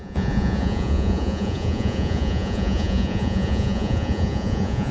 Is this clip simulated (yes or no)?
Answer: yes